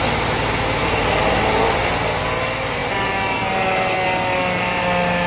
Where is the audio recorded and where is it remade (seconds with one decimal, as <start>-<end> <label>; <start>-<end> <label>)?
0.0-0.8 recorded; 0.8-2.2 remade; 2.2-5.3 recorded